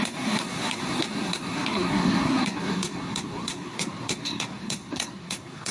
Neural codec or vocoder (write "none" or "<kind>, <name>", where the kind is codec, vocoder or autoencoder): codec, SNAC